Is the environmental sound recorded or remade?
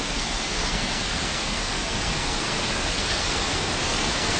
remade